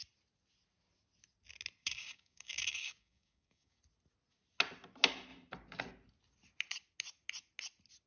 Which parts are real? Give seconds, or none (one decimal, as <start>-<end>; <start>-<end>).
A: 0.0-1.8; 3.8-8.1